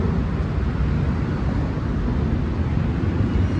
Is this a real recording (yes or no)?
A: yes